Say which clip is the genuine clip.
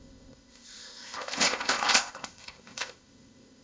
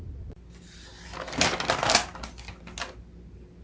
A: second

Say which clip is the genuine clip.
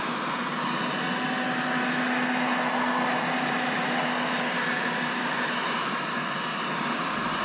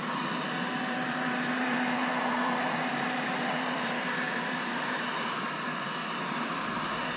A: first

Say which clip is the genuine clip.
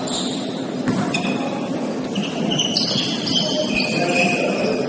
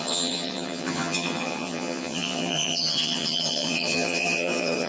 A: first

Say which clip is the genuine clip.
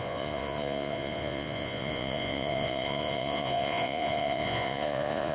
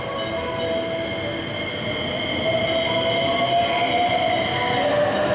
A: second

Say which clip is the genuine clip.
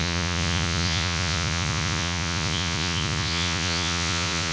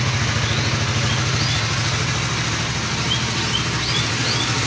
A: second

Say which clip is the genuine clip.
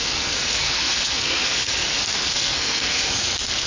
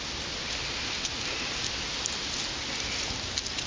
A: second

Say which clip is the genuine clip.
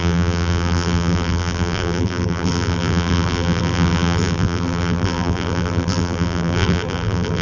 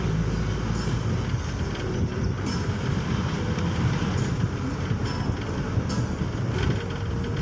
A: second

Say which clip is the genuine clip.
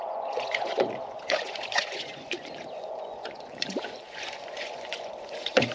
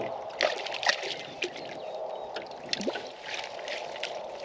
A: second